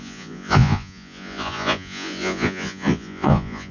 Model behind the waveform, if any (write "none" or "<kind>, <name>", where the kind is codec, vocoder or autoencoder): vocoder, Vocos